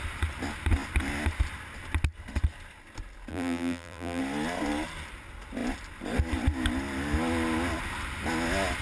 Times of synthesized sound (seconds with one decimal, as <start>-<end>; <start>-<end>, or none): 3.3-4.2